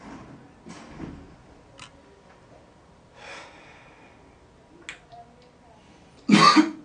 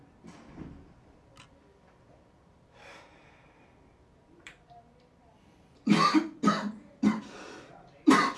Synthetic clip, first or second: second